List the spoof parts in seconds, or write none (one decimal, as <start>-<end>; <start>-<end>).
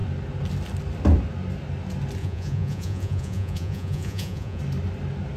2.2-4.6